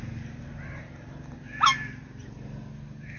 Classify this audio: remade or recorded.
recorded